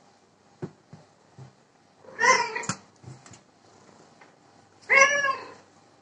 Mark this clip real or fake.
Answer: real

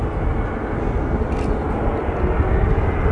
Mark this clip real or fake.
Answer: real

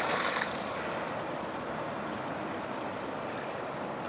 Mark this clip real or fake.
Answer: fake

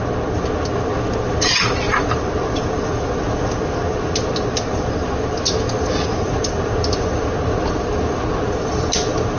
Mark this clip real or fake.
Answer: real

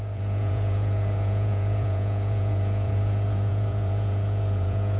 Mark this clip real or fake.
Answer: fake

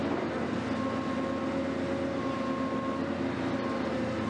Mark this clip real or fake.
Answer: real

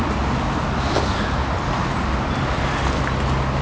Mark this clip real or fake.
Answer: real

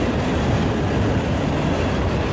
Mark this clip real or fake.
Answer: real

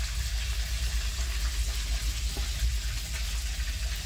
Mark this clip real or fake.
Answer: real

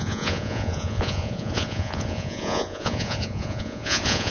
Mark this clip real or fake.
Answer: fake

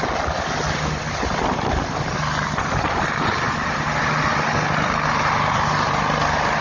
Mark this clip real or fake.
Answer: real